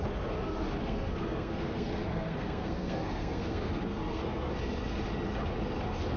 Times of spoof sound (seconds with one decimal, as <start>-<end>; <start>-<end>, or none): 0.8-4.5